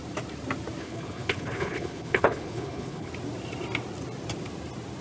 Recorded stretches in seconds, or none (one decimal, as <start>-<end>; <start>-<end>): 0.0-0.8; 3.1-5.0